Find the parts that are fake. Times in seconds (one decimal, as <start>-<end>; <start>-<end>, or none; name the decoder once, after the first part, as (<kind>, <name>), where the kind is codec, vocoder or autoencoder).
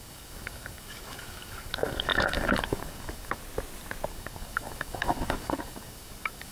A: 0.0-3.4 (codec, DAC); 4.1-6.5